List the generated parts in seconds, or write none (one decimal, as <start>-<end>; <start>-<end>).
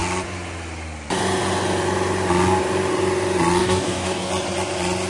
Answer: 3.6-4.3